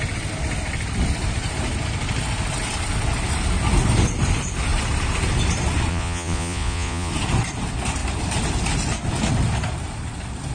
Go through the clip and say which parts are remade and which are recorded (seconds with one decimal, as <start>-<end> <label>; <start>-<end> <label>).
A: 0.0-5.9 recorded; 5.9-7.1 remade; 7.1-10.5 recorded